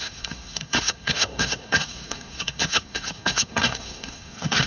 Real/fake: fake